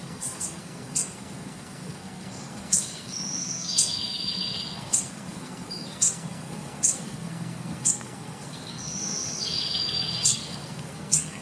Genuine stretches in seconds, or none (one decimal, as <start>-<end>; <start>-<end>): none

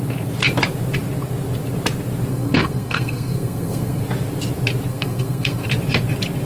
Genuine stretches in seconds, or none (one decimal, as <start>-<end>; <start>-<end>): 0.0-2.3; 4.0-4.9; 5.7-6.5

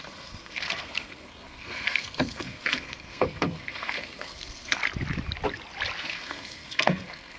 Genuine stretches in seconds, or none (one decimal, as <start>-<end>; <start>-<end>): 4.8-6.0

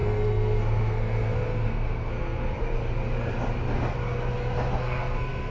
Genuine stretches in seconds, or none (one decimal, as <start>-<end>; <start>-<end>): 2.8-4.7